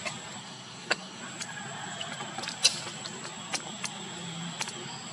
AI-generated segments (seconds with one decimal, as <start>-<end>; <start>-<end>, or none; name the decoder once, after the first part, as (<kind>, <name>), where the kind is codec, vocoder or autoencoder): 0.4-1.2 (codec, SNAC)